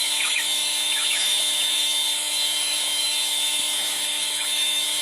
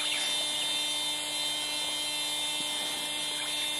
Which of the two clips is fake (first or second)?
first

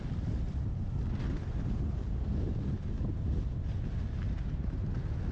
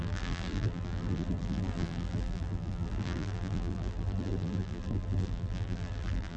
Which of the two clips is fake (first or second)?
second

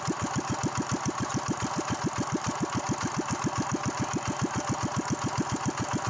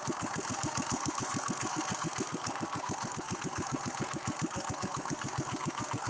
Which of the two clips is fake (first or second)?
second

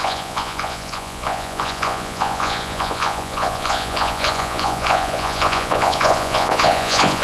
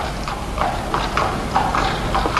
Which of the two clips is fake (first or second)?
first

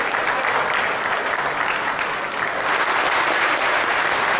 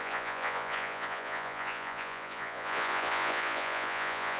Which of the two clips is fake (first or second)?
second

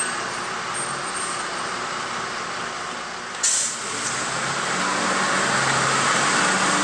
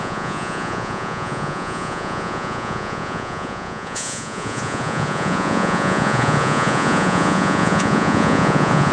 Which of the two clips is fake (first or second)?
second